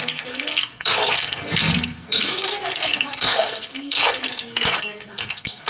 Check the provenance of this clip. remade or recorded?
remade